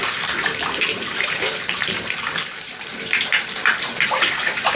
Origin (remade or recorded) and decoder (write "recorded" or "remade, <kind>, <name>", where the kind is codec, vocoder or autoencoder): remade, vocoder, BigVGAN v2